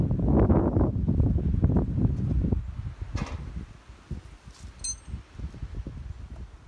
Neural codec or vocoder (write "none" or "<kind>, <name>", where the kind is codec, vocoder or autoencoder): none